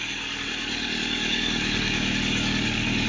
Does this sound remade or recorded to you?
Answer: remade